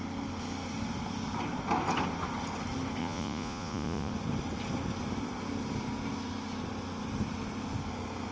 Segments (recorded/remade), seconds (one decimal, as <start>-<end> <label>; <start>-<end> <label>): 0.0-3.0 recorded; 3.0-4.1 remade; 4.1-8.3 recorded